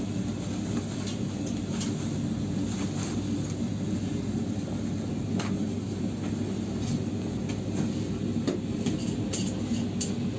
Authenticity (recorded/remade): recorded